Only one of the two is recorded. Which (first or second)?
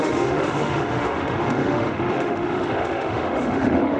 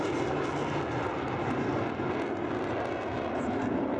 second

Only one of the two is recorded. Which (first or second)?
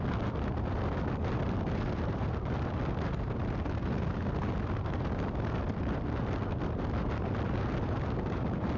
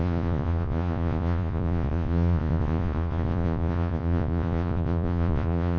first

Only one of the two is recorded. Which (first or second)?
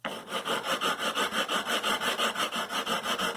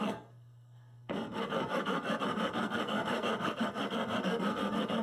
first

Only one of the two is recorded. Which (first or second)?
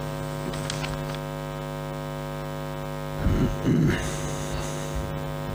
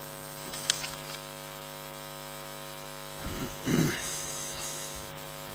first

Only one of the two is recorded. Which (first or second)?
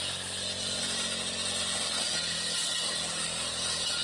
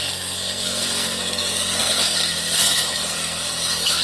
first